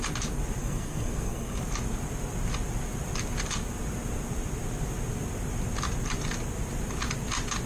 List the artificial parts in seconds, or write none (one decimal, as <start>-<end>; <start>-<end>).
0.6-1.6